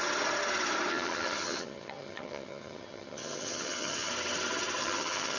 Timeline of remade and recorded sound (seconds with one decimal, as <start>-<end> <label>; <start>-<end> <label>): 0.0-0.9 recorded; 0.9-4.1 remade; 4.1-4.8 recorded; 4.8-5.4 remade